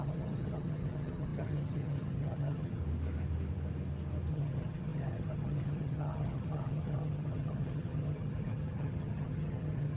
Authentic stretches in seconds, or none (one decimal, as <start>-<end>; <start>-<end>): 2.8-4.3